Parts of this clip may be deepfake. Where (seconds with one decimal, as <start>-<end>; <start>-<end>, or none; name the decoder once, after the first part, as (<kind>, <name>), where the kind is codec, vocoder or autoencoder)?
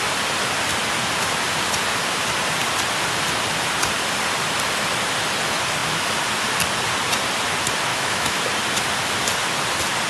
7.9-8.4 (autoencoder, DAC-VAE)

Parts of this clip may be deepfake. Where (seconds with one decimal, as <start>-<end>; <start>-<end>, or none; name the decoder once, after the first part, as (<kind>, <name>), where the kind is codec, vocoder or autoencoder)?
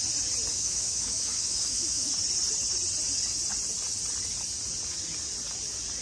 0.5-2.1 (autoencoder, DAC-VAE)